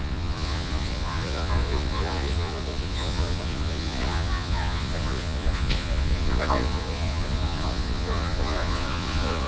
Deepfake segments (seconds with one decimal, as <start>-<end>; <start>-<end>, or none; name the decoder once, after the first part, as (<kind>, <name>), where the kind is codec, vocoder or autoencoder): 0.0-9.5 (vocoder, Vocos)